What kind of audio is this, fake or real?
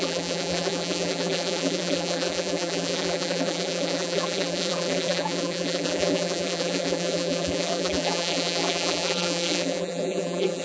fake